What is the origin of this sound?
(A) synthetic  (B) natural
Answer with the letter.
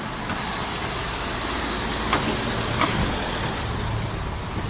B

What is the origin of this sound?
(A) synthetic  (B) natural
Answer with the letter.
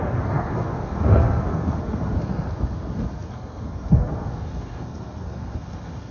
A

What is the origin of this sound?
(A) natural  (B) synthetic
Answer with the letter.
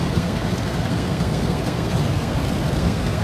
B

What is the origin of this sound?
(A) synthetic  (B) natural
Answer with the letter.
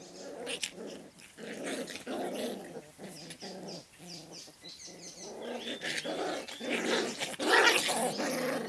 B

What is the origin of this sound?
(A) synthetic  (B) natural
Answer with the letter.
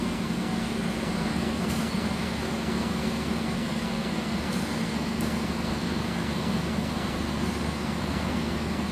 A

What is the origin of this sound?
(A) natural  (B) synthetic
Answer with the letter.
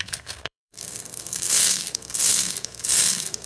B